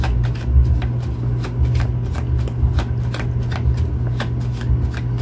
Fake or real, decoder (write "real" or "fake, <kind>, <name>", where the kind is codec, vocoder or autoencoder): real